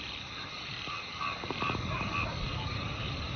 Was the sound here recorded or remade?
recorded